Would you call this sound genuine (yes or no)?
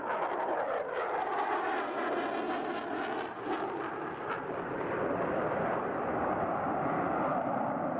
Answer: yes